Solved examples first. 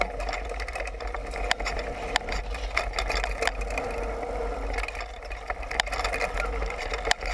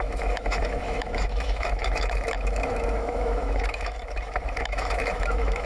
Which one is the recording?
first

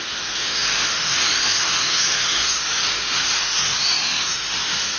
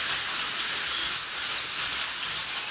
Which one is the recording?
second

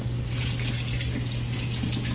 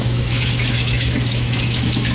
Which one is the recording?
first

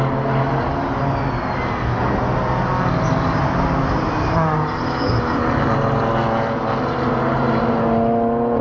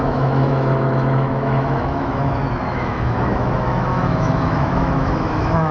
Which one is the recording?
first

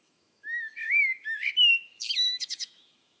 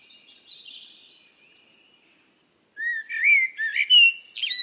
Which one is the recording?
second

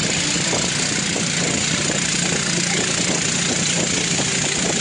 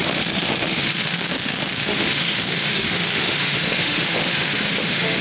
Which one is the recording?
first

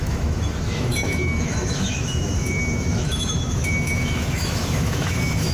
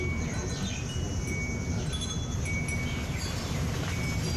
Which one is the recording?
second